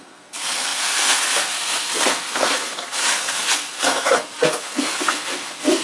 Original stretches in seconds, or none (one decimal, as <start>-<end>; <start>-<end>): none